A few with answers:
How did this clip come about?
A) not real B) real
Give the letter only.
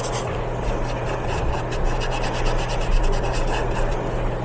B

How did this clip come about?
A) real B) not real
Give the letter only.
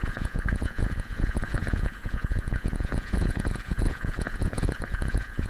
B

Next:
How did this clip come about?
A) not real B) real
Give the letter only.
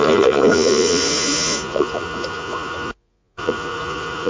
A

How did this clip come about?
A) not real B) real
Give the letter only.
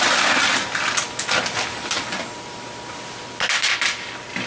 B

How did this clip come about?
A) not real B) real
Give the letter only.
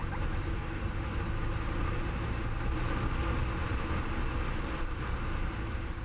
B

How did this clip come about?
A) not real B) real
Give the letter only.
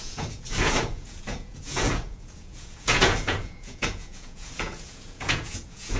A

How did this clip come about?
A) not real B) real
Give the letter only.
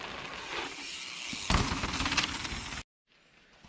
B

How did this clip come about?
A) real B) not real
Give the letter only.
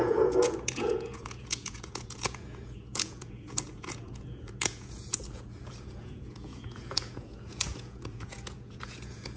B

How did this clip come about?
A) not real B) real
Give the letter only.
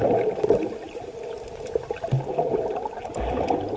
B